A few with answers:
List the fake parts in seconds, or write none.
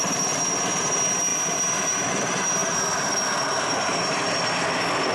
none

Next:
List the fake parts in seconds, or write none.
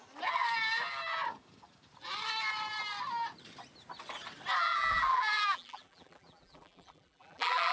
4.6-7.7 (vocoder, BigVGAN v2)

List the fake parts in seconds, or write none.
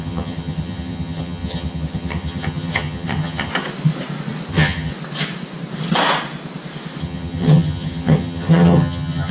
0.0-3.5 (vocoder, HiFi-GAN); 4.5-4.9; 7.0-9.3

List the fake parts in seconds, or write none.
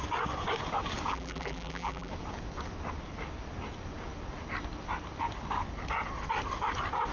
1.1-2.1 (vocoder, BigVGAN v2)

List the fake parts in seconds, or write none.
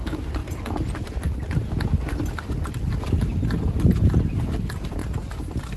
none